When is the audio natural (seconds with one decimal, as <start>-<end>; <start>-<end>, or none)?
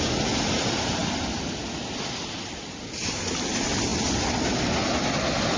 0.0-5.6